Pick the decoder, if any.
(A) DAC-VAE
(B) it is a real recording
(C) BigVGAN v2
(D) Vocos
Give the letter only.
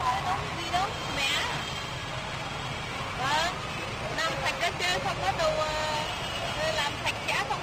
B